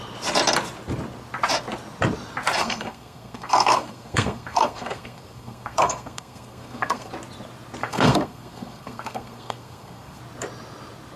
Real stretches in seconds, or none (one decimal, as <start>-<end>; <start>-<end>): 0.0-2.6; 7.1-7.8; 10.2-11.2